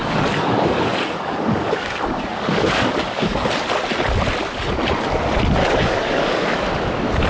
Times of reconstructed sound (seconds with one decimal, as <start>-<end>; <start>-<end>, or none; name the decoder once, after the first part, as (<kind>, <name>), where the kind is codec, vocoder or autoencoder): 0.0-3.5 (codec, DAC); 5.6-6.7